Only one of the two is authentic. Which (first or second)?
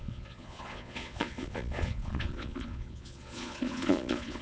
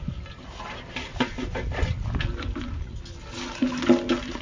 second